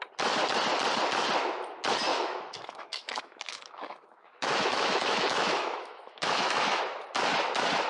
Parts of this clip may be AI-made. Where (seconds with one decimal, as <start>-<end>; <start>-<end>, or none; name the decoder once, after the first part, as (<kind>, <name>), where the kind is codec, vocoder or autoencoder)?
2.1-6.8 (autoencoder, DAC-VAE)